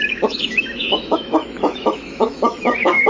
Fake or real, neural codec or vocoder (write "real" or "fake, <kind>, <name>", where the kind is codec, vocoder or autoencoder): fake, autoencoder, DAC-VAE